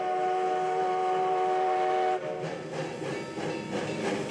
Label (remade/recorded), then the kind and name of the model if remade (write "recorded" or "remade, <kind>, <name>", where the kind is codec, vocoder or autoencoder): recorded